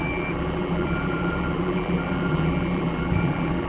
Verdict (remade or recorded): remade